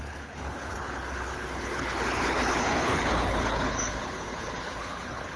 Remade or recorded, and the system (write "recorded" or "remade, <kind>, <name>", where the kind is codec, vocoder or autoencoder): remade, codec, HILCodec